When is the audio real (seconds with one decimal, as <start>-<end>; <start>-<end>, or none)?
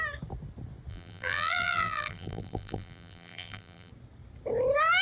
0.0-0.9; 3.9-5.0